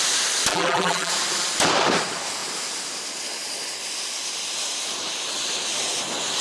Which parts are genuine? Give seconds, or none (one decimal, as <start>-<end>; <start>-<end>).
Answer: 0.0-0.5; 1.1-6.4